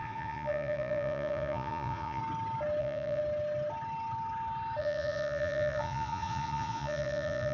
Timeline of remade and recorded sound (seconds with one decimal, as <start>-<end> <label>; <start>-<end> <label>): 0.0-2.2 remade; 2.2-2.8 recorded; 2.8-3.2 remade; 3.2-4.8 recorded; 4.8-7.5 remade